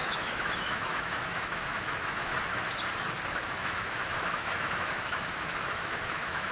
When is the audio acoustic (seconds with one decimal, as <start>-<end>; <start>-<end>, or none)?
2.3-3.3